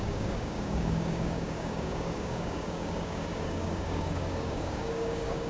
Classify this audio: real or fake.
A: fake